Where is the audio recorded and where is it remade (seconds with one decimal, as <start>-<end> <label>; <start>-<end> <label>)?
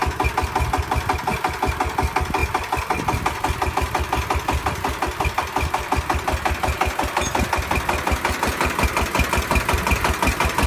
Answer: 0.0-10.7 recorded